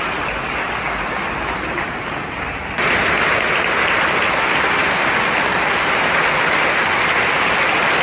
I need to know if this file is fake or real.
real